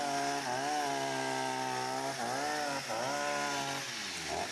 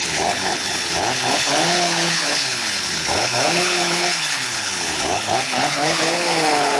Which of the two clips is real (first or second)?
first